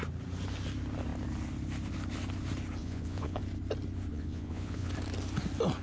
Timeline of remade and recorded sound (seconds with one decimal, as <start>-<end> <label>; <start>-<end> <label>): 0.0-2.8 recorded; 2.8-3.4 remade; 3.4-4.1 recorded; 4.1-4.9 remade; 4.9-5.8 recorded